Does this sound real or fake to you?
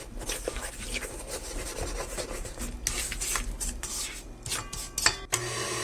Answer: real